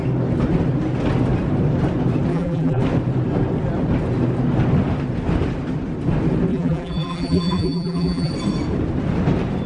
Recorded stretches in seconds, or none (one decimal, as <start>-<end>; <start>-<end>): 0.0-2.3; 2.8-6.5; 8.3-9.7